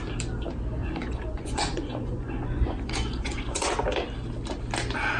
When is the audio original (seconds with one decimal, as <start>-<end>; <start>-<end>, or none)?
0.0-0.8; 3.7-5.2